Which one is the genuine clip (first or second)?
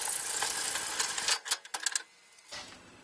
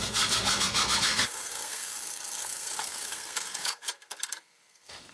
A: first